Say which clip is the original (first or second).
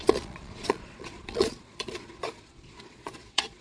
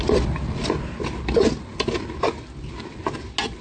second